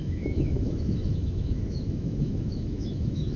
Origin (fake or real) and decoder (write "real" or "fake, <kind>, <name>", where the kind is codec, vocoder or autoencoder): fake, autoencoder, DAC-VAE